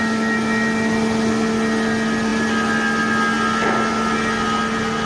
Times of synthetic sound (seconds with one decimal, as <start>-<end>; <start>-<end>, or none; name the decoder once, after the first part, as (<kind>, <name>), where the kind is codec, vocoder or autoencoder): none